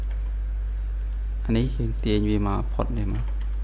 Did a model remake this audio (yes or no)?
no